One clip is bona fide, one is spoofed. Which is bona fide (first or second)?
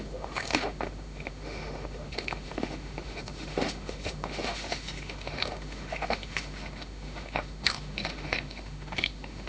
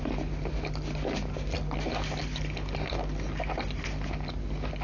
second